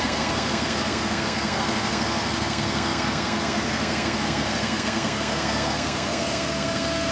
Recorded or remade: remade